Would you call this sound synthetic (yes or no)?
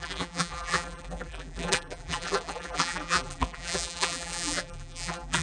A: yes